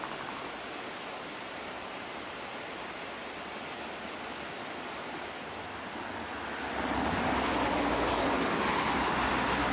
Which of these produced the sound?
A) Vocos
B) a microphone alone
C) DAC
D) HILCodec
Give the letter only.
B